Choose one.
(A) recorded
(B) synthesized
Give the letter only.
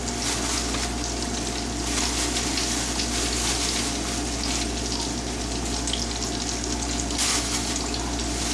A